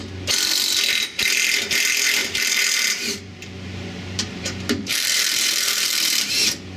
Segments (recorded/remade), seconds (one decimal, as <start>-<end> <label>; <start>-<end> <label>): 0.0-2.2 recorded; 2.2-6.3 remade; 6.3-6.8 recorded

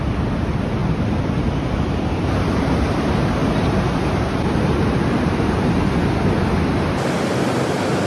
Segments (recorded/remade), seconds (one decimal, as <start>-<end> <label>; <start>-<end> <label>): 0.0-0.8 recorded; 0.8-2.2 remade; 2.2-3.4 recorded; 3.4-5.9 remade; 5.9-8.1 recorded